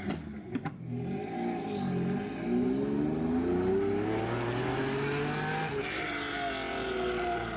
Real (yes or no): yes